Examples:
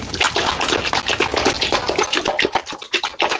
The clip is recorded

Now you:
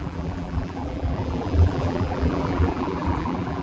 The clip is remade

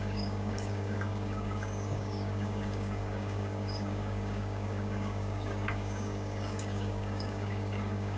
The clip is remade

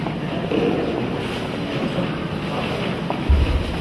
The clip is recorded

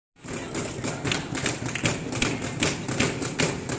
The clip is recorded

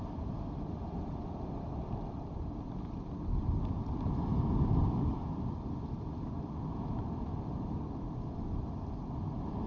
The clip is remade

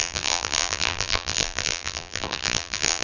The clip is remade